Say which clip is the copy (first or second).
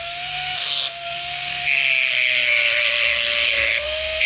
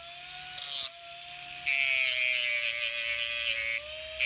first